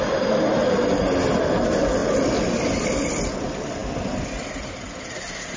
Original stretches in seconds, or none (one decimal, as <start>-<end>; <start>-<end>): 0.0-5.6